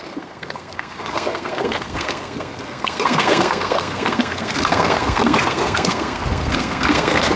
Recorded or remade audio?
remade